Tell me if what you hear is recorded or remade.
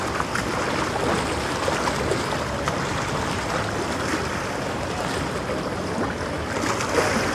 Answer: recorded